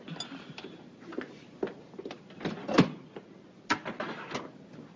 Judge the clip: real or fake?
real